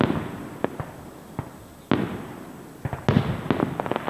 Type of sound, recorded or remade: recorded